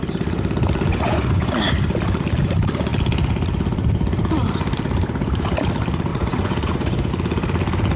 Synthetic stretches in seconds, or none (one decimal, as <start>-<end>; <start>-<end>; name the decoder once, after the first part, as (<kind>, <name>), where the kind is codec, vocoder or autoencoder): 0.9-1.5 (vocoder, Vocos); 6.1-7.1